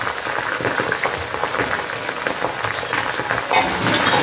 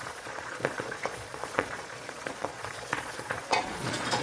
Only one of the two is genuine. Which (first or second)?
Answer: first